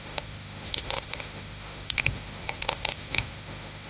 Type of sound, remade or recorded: remade